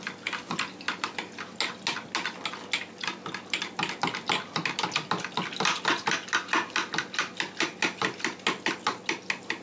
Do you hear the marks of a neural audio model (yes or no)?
no